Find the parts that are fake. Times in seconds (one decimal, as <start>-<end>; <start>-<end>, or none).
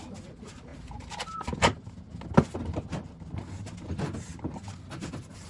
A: none